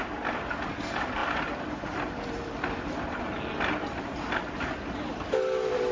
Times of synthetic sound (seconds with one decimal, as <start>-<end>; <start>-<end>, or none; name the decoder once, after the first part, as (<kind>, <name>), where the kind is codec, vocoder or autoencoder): none

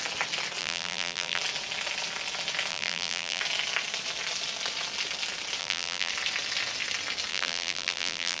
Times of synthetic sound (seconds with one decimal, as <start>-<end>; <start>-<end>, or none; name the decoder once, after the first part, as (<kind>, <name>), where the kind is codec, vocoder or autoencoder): 0.6-1.4 (vocoder, BigVGAN v2); 2.7-3.4; 5.6-6.1; 7.3-8.4